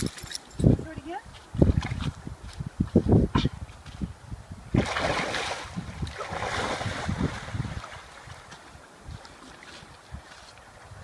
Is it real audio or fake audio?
real